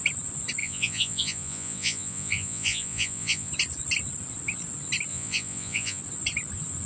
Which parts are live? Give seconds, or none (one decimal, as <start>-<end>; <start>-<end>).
0.0-0.6; 3.5-5.1; 6.0-6.9